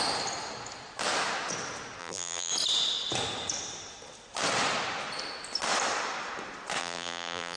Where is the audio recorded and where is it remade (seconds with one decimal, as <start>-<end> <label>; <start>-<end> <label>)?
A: 0.0-2.0 recorded; 2.0-2.5 remade; 2.5-6.8 recorded; 6.8-7.6 remade